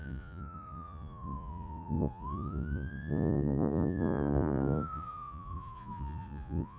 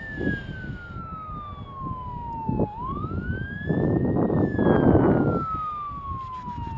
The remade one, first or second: first